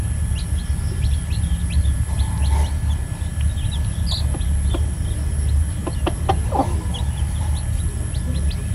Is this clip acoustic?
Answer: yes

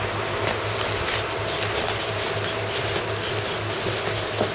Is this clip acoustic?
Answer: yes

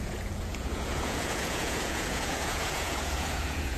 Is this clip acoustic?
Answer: no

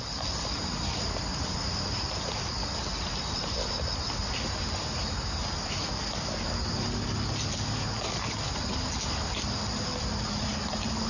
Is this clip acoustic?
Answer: yes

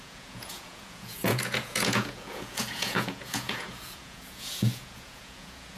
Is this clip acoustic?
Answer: no